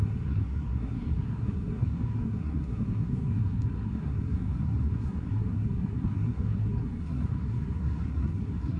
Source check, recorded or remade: remade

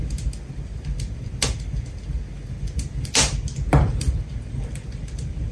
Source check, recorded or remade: recorded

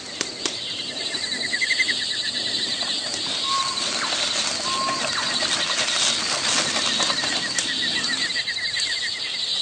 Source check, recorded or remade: recorded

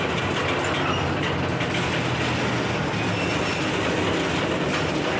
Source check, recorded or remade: recorded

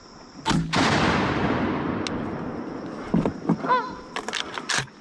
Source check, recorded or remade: recorded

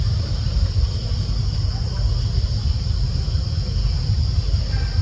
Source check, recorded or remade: recorded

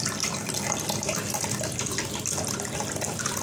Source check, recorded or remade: recorded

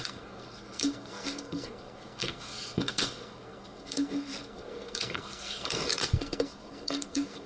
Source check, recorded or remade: remade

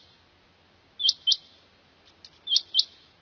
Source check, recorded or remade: recorded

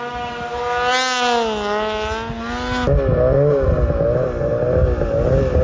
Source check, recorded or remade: recorded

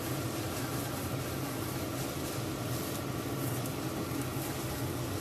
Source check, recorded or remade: recorded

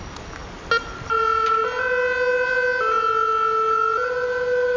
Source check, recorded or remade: recorded